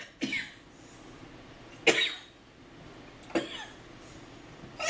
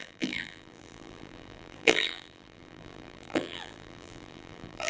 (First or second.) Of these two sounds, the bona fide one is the first